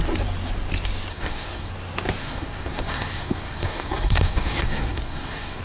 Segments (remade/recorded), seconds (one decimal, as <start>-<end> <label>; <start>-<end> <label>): 0.0-1.1 recorded; 1.1-1.7 remade; 1.7-2.2 recorded; 2.2-5.6 remade